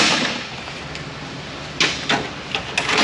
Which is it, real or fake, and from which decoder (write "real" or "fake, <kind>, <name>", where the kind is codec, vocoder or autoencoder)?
real